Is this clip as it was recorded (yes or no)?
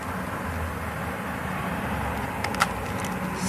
yes